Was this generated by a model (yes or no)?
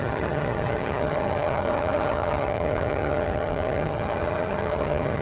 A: yes